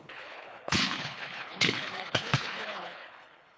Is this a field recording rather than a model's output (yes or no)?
no